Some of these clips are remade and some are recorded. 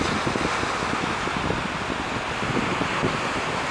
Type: recorded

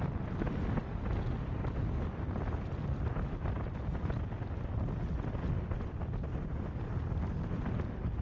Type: recorded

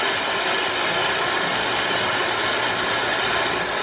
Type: recorded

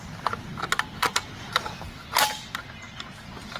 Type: recorded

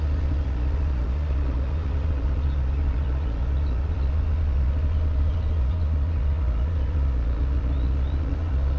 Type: remade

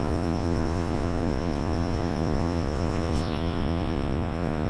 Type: remade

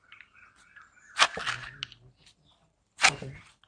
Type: recorded